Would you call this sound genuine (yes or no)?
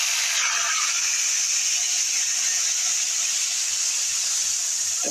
yes